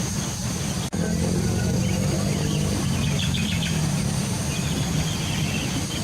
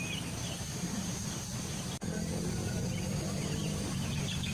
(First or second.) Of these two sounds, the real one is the first